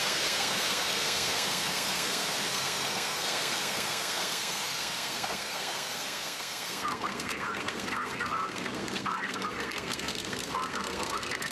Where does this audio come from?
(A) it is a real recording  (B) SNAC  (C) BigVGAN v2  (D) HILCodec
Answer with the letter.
B